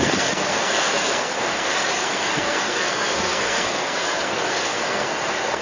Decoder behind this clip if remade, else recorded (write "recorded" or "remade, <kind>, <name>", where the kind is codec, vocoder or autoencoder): remade, codec, SNAC